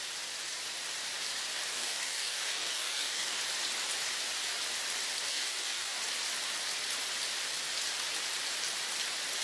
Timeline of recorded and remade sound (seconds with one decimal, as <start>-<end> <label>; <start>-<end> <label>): 0.0-1.7 recorded; 1.7-3.4 remade; 3.4-5.3 recorded; 5.3-6.0 remade; 6.0-9.4 recorded